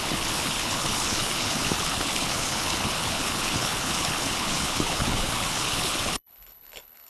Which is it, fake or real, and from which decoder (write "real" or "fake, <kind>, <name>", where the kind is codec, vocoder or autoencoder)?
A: fake, codec, HILCodec